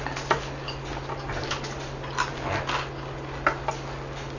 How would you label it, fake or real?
real